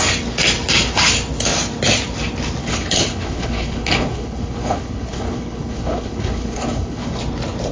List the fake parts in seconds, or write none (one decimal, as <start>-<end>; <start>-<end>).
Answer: 2.6-7.2